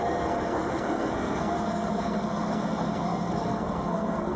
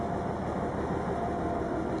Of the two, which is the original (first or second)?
second